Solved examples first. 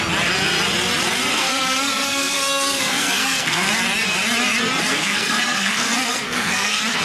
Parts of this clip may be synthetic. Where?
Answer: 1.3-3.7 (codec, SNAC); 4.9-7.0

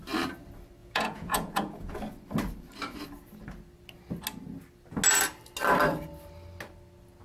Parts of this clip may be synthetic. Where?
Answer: 0.8-2.0 (vocoder, Vocos)

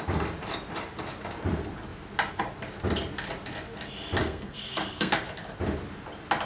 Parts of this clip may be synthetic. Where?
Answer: 4.2-5.3 (codec, SNAC)

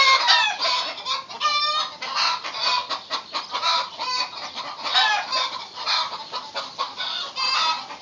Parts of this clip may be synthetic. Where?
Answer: none

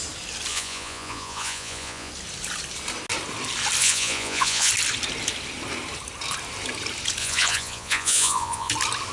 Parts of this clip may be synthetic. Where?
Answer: 0.5-2.1 (vocoder, Vocos); 3.8-4.7; 7.2-8.7

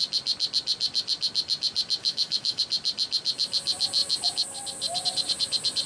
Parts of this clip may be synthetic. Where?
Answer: 2.0-2.6 (autoencoder, DAC-VAE)

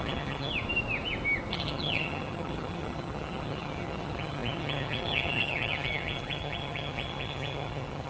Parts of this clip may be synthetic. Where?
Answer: 0.0-0.5 (vocoder, HiFi-GAN); 1.5-8.1

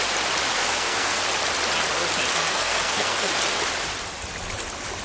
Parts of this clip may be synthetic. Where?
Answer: 0.5-1.2 (codec, SNAC); 2.3-3.3